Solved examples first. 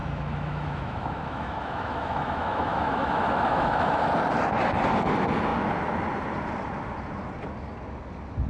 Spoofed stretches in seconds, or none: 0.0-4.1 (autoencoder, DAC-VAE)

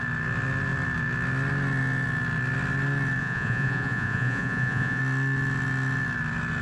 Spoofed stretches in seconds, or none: 3.2-5.0 (vocoder, Vocos)

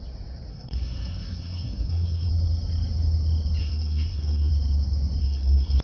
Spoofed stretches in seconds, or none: 0.5-2.3 (codec, SNAC); 3.6-4.5; 5.2-5.8